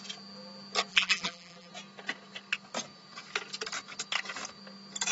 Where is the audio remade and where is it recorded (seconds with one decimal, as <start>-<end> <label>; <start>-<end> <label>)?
0.0-0.9 recorded; 0.9-1.7 remade; 1.7-5.1 recorded

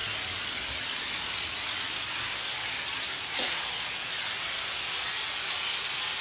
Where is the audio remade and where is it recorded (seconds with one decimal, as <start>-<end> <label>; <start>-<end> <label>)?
0.0-0.9 recorded; 0.9-6.2 remade